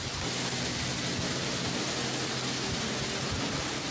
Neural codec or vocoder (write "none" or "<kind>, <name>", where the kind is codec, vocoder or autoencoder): none